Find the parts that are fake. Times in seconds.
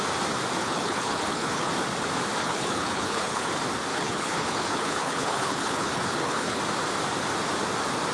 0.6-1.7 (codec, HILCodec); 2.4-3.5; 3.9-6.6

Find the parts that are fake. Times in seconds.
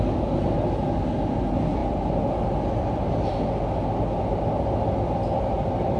none